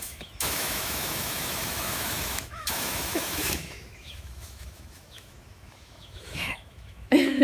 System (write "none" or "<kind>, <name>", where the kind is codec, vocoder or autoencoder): autoencoder, DAC-VAE